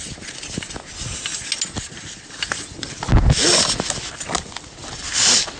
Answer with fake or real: real